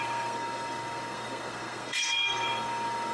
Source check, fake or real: fake